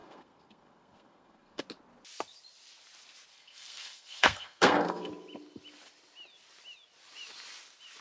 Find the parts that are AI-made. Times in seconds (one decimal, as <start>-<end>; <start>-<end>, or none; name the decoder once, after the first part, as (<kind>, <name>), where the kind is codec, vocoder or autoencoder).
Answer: 0.0-1.6 (codec, SNAC); 3.3-5.1

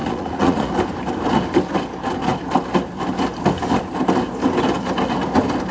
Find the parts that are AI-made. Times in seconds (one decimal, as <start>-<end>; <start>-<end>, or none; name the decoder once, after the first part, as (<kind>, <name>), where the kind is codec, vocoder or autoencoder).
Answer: 0.0-0.7 (vocoder, Vocos)

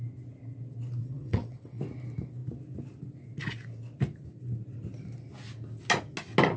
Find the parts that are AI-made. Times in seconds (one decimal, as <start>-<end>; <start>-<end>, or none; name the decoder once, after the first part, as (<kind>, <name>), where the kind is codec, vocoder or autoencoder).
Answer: 1.0-1.8 (vocoder, WaveNeXt)

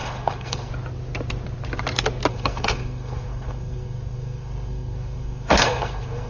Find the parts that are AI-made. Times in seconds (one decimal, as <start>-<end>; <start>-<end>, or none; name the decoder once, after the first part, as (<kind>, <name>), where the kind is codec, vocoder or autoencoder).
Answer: 0.0-0.7 (codec, SNAC); 2.3-6.3

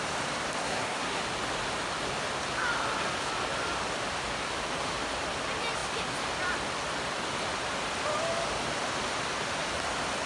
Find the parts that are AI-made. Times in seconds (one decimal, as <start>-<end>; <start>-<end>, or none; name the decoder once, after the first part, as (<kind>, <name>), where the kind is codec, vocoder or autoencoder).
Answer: 0.6-1.2 (codec, SNAC)